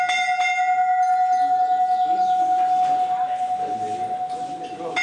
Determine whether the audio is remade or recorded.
recorded